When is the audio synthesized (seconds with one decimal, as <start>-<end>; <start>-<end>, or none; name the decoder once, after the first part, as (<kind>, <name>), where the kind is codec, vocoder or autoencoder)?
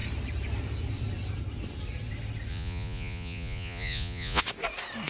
2.5-4.4 (vocoder, Vocos)